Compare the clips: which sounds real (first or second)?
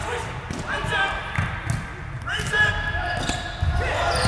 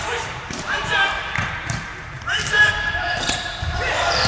first